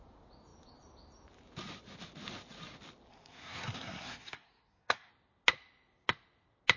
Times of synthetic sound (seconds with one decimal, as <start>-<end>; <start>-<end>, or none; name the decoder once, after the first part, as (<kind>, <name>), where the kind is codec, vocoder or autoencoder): 3.1-5.1 (codec, SNAC)